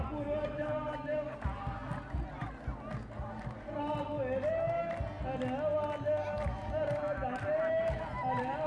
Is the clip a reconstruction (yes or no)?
no